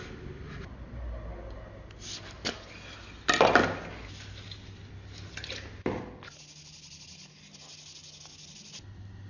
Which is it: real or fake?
real